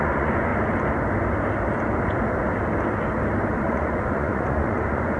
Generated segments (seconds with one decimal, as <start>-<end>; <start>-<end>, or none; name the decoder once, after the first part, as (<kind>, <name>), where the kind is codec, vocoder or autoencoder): 0.0-0.5 (vocoder, Vocos); 3.6-5.2